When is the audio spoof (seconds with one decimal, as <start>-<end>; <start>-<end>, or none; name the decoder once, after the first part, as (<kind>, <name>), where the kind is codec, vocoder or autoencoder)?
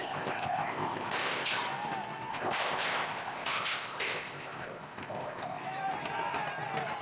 0.0-1.6 (codec, ZipCodec); 2.3-5.6